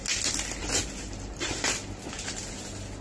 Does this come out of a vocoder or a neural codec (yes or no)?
no